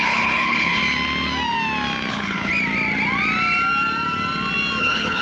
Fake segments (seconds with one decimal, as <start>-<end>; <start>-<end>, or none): 0.0-0.8; 2.1-2.5; 4.8-5.2